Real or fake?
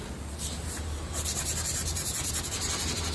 real